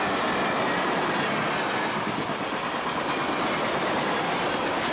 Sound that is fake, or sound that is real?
real